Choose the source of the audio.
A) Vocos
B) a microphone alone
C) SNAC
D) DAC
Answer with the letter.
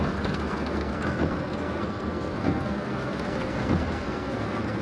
C